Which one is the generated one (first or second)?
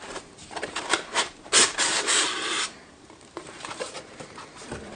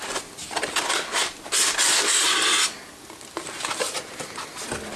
first